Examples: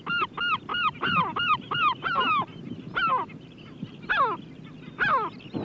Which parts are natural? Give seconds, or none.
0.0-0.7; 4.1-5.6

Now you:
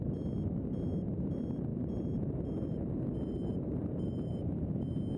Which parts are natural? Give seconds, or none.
0.0-1.7; 4.8-5.2

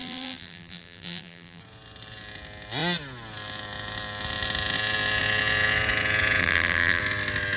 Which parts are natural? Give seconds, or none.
1.6-6.4; 7.0-7.6

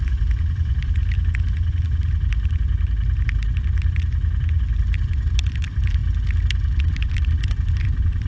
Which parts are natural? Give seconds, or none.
1.0-5.3; 6.0-7.7

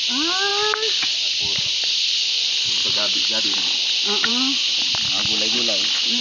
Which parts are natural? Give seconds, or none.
0.0-6.2

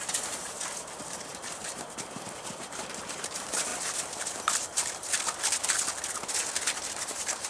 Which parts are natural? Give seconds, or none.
0.4-1.3; 3.7-6.8

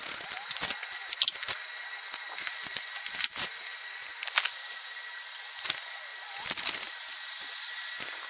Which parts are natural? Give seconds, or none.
0.0-8.3